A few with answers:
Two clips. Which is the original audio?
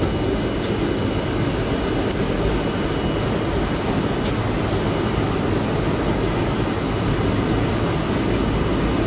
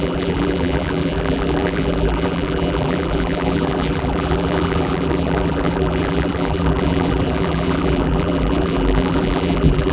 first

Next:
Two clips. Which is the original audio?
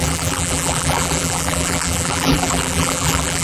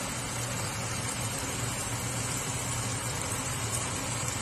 second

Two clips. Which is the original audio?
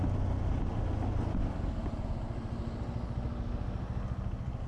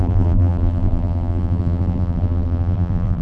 first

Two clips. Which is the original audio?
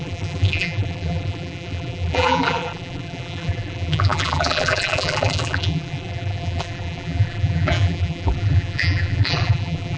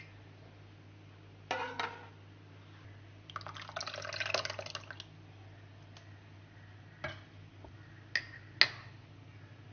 second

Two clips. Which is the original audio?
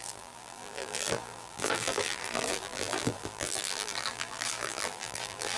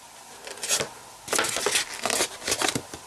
second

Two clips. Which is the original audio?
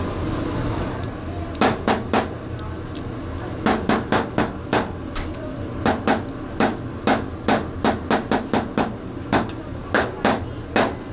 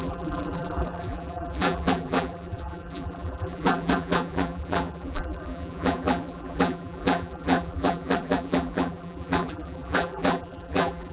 first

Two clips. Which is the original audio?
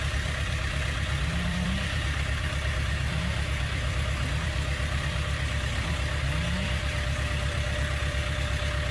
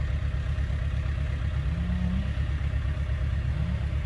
second